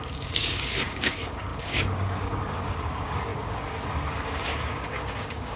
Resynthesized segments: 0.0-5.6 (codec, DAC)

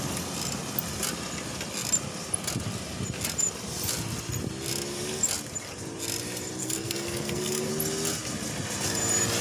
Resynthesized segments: 6.6-7.7 (codec, SNAC)

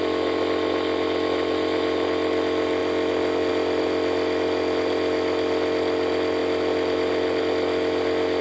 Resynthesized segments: none

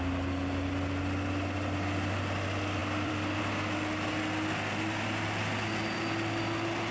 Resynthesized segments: 2.8-3.4 (vocoder, BigVGAN v2)

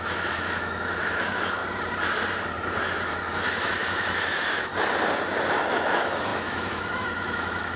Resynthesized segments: 0.0-1.6 (autoencoder, DAC-VAE); 2.9-4.7; 5.7-7.8

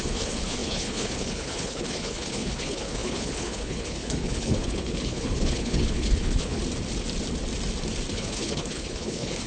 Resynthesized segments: 0.0-6.6 (codec, HILCodec); 8.1-9.5